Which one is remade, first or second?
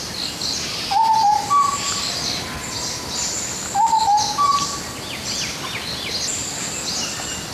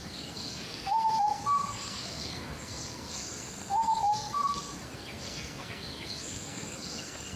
second